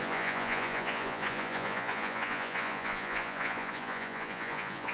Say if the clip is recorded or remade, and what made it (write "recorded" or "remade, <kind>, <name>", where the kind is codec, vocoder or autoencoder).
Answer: remade, vocoder, Vocos